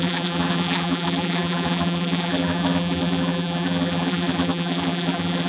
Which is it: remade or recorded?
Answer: remade